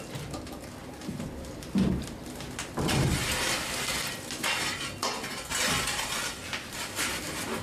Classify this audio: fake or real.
real